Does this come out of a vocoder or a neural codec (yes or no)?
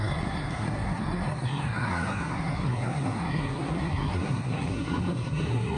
yes